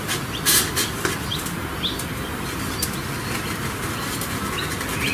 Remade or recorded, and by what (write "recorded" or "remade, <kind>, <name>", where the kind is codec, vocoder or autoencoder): remade, vocoder, BigVGAN v2